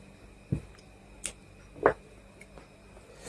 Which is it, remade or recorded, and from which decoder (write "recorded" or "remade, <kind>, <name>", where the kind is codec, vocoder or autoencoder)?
recorded